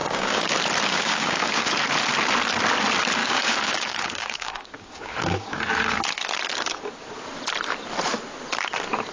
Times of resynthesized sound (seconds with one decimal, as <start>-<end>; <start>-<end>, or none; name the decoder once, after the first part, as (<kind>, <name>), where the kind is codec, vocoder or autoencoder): 0.0-0.5 (codec, DAC); 0.9-1.7; 3.2-5.6